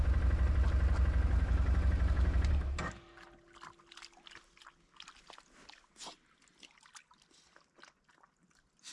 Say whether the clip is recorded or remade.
recorded